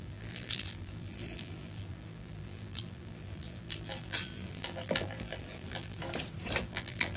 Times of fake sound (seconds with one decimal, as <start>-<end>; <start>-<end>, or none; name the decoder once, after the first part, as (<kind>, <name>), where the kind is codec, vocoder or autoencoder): 0.0-6.0 (vocoder, BigVGAN v2); 6.6-7.2

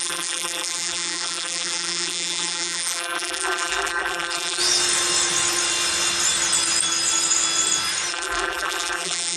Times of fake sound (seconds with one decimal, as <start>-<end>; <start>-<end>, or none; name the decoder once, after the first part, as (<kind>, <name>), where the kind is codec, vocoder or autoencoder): 0.0-4.6 (vocoder, BigVGAN v2); 8.1-9.4

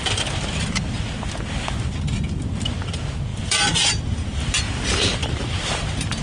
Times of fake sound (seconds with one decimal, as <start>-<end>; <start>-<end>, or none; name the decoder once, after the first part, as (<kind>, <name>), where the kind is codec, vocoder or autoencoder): 3.3-4.4 (vocoder, BigVGAN v2); 5.2-5.8

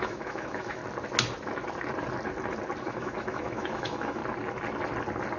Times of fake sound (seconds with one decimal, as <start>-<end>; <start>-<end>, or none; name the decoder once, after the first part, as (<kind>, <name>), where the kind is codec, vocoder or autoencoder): 0.0-0.8 (autoencoder, DAC-VAE); 2.8-4.2

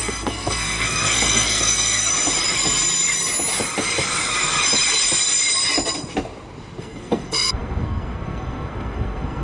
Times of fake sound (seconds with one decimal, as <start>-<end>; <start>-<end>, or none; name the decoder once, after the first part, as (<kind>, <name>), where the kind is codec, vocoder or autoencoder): 0.0-2.1 (codec, SNAC); 6.8-9.4